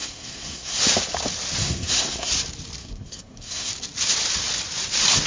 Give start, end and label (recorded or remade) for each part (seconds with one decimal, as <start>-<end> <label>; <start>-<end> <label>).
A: 0.0-0.8 remade; 0.8-1.6 recorded; 1.6-2.3 remade; 2.3-2.8 recorded; 2.8-3.7 remade; 3.7-5.3 recorded